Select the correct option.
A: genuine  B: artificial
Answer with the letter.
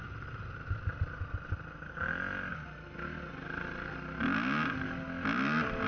A